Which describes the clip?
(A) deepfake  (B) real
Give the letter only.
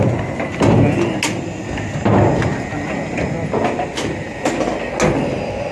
B